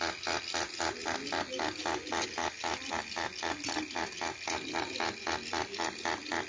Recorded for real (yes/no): yes